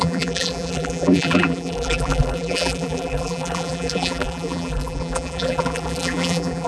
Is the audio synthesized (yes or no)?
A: yes